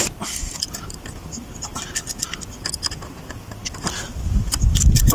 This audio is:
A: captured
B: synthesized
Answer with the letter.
A